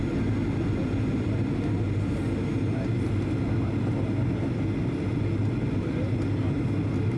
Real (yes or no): yes